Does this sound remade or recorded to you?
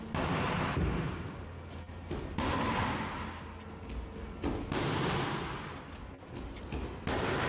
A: recorded